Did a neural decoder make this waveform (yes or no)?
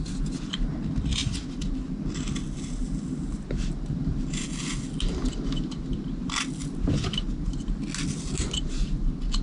no